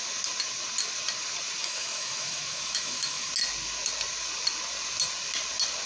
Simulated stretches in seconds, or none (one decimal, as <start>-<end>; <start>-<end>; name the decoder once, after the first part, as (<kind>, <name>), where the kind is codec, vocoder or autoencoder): 1.6-3.3 (autoencoder, DAC-VAE)